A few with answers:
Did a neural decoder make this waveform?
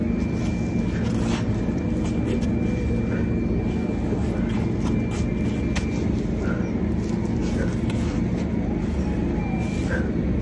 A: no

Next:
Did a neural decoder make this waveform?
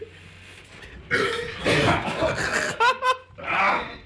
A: no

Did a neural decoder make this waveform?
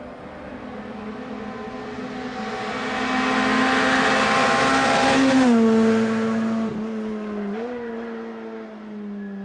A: no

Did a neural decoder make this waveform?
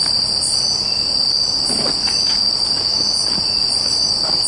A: no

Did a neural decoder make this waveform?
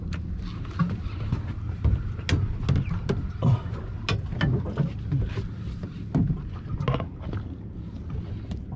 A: no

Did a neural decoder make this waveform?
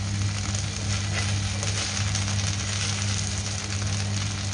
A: no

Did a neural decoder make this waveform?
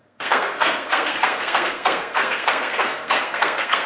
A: yes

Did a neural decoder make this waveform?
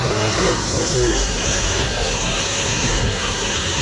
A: yes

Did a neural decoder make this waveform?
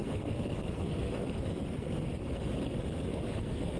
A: yes